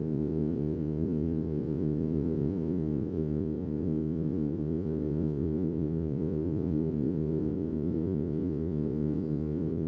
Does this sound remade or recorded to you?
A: remade